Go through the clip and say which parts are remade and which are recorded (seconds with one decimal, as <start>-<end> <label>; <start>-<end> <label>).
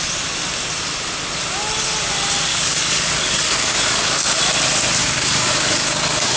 0.0-2.5 recorded; 2.5-4.4 remade; 4.4-5.0 recorded; 5.0-6.4 remade